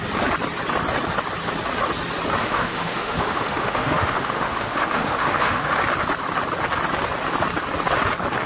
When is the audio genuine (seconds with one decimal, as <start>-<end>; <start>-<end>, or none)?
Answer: 0.0-2.4; 5.8-8.5